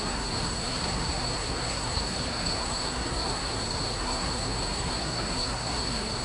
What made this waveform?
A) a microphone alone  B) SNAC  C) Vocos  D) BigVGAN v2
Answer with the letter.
B